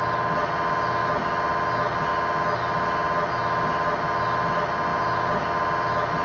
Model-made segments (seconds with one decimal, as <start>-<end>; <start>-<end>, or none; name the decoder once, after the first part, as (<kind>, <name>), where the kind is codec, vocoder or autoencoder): 4.9-5.5 (vocoder, Vocos)